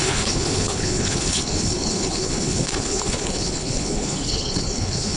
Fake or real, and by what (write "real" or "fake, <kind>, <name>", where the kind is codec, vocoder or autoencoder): fake, codec, HILCodec